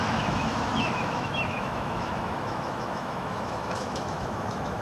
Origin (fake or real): fake